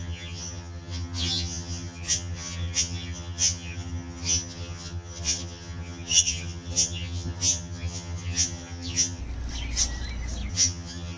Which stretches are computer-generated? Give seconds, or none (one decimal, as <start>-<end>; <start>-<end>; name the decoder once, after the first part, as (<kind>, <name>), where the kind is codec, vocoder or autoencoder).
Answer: 0.0-9.2 (vocoder, HiFi-GAN); 10.5-11.2